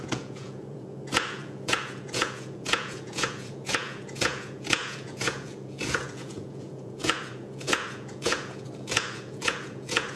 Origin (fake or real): fake